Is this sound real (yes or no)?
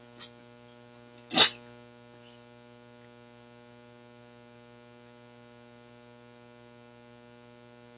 yes